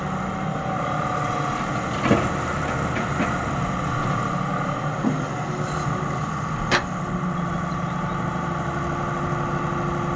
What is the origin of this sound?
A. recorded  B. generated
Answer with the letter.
A